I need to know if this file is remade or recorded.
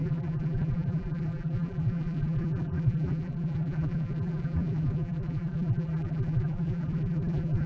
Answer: remade